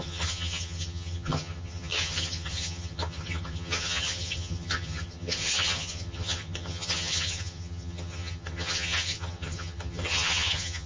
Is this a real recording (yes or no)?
no